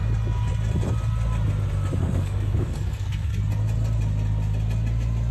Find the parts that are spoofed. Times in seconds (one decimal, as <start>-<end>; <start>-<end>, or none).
2.0-3.3